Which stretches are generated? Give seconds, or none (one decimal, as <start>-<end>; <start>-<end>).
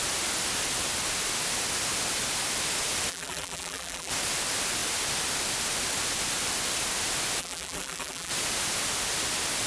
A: 3.1-4.1; 7.4-8.3